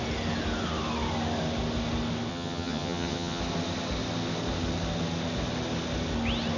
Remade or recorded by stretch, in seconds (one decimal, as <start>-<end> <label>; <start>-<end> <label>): 0.0-2.3 recorded; 2.3-3.4 remade; 3.4-6.6 recorded